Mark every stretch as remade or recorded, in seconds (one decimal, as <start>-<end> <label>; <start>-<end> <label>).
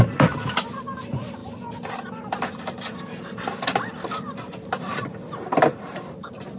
0.0-6.6 recorded